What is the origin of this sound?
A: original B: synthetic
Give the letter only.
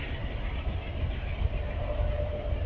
A